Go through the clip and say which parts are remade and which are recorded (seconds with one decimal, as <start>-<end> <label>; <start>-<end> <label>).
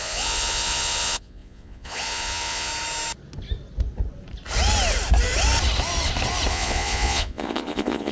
0.0-2.7 remade; 2.7-6.5 recorded; 6.5-8.1 remade